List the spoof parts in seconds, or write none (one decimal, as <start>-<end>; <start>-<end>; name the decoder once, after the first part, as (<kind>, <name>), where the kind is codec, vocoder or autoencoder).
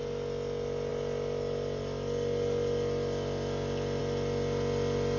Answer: none